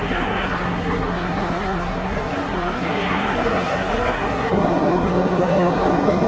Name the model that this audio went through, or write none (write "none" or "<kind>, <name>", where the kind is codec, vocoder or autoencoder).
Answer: codec, SNAC